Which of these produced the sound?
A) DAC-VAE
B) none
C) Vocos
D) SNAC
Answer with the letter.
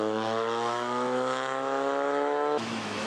A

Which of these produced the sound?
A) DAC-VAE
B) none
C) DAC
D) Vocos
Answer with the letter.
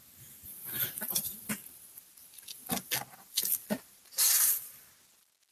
B